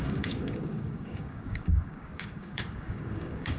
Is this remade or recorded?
remade